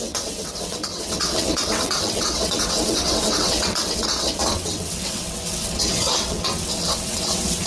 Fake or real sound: fake